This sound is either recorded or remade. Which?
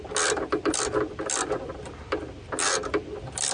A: recorded